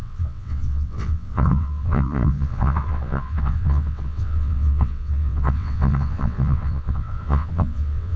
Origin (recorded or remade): remade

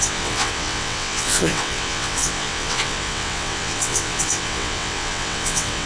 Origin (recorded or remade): remade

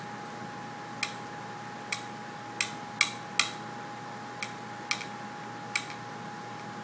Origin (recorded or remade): recorded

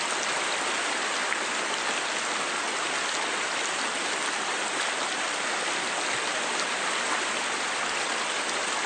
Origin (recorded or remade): recorded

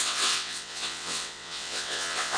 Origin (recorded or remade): remade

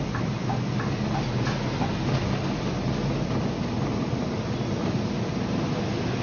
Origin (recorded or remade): recorded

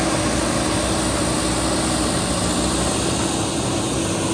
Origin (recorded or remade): recorded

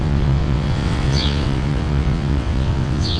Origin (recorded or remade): remade